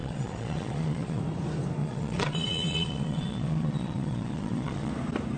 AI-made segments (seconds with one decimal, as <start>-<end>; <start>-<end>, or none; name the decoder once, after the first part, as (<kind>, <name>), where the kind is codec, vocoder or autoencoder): 0.0-1.2 (vocoder, Vocos); 1.8-4.9